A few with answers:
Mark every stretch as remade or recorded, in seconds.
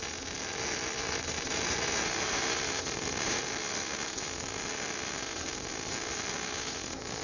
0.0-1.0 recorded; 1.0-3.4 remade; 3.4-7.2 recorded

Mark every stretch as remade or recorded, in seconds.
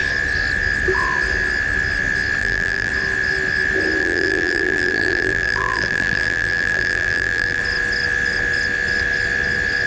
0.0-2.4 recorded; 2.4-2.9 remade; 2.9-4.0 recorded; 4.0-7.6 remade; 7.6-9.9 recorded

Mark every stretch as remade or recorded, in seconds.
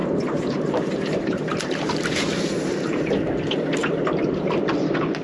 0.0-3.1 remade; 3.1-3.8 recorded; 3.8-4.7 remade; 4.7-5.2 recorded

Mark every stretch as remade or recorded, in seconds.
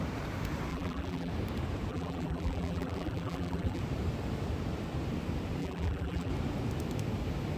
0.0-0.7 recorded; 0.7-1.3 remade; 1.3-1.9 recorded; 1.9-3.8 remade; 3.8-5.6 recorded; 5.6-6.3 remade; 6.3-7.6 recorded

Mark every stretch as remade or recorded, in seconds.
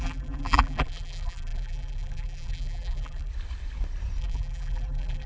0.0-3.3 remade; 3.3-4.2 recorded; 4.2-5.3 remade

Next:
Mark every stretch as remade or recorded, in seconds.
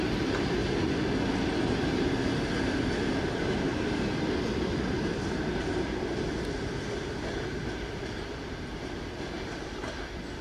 0.0-3.7 recorded; 3.7-6.5 remade; 6.5-10.4 recorded